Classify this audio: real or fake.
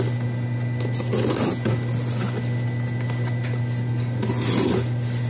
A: real